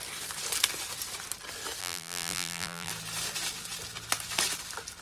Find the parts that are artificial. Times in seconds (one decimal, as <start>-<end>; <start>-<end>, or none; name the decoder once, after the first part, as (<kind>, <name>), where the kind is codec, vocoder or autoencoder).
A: 1.8-2.9 (vocoder, BigVGAN v2)